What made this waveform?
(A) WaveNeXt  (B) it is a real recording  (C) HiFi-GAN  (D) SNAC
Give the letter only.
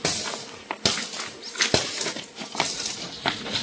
B